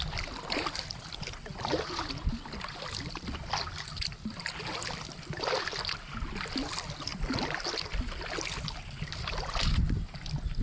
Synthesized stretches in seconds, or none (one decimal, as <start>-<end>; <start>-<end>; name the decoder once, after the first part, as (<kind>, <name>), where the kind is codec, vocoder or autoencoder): none